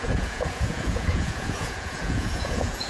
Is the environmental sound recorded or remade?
remade